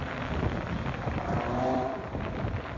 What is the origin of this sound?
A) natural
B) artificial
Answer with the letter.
A